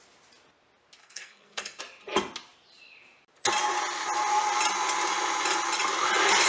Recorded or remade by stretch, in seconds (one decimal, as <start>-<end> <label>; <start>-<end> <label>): 0.0-1.0 recorded; 1.0-1.8 remade; 1.8-6.5 recorded